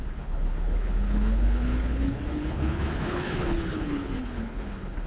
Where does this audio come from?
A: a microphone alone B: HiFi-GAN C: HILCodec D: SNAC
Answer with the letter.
C